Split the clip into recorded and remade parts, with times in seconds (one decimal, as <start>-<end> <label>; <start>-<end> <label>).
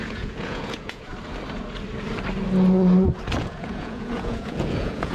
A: 0.0-1.1 remade; 1.1-3.4 recorded; 3.4-5.1 remade